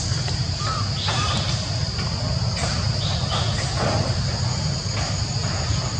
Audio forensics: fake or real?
real